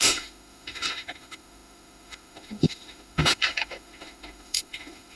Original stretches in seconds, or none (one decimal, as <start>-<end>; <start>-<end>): none